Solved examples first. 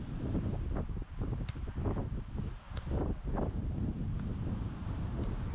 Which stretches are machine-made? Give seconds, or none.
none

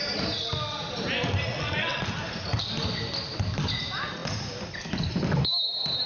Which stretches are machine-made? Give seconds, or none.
1.5-2.0 (vocoder, WaveNeXt)